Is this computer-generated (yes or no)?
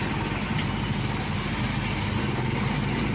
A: no